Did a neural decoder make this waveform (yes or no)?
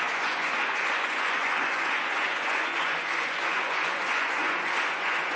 yes